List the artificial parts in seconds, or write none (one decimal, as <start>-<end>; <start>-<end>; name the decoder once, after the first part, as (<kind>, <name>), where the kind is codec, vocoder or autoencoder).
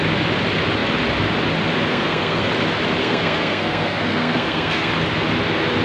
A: 1.9-2.5 (codec, SNAC); 3.0-4.9